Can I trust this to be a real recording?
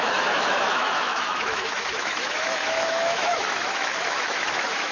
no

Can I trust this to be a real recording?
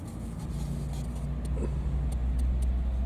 yes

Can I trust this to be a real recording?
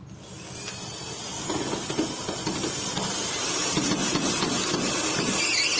yes